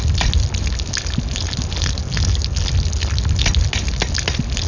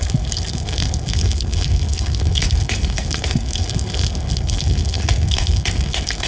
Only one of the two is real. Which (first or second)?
first